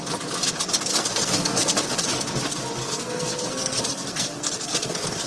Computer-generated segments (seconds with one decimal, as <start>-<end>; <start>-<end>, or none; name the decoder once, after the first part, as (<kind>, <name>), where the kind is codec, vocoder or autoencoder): 0.9-1.9 (codec, SNAC); 2.8-5.3